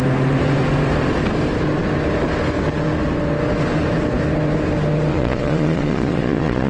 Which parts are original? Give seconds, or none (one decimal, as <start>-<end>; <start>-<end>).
0.0-5.1